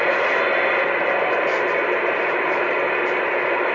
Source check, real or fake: real